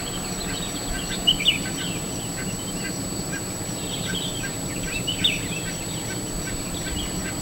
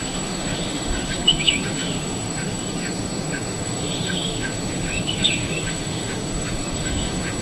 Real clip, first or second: first